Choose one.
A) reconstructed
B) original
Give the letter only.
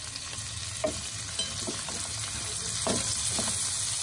B